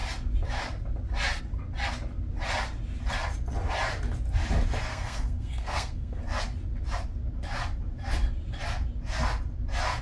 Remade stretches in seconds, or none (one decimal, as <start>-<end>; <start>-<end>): 4.9-6.2